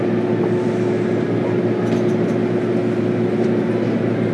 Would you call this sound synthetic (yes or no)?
no